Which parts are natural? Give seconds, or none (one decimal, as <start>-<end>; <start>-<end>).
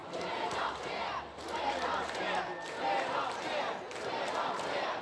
2.4-5.0